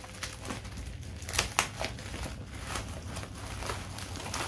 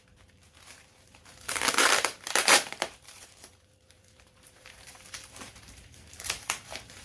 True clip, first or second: first